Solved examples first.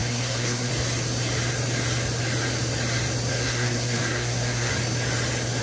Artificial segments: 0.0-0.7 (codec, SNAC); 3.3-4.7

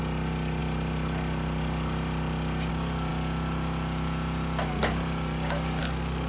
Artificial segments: 5.8-6.3 (codec, SNAC)

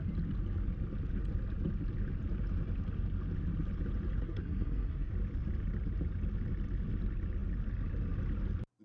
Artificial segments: 4.2-5.1 (codec, SNAC)

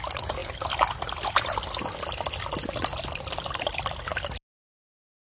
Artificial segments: none

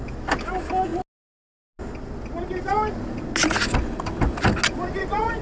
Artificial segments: none

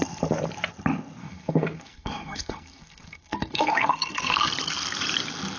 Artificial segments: 1.2-4.5 (codec, SNAC)

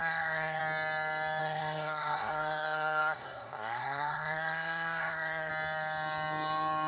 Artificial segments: 0.0-0.6 (codec, SNAC); 1.4-5.5

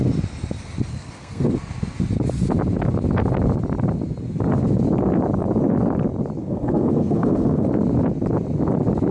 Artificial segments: 0.9-1.6 (codec, SNAC); 6.4-7.7